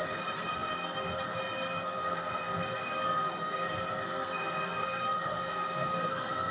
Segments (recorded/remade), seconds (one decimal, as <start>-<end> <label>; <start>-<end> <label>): 0.0-6.5 remade